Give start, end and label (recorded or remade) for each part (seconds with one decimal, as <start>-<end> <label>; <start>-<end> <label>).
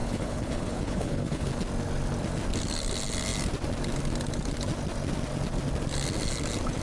0.0-1.5 remade; 1.5-6.8 recorded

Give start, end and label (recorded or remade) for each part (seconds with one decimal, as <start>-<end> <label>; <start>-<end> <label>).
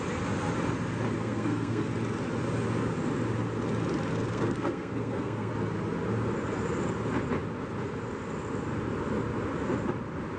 0.0-1.2 recorded; 1.2-1.9 remade; 1.9-4.1 recorded; 4.1-5.5 remade; 5.5-10.4 recorded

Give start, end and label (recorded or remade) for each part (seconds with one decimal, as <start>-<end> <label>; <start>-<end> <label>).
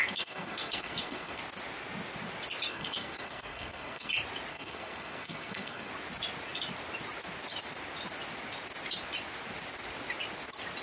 0.0-1.4 remade; 1.4-2.7 recorded; 2.7-4.1 remade; 4.1-4.5 recorded; 4.5-5.9 remade; 5.9-10.8 recorded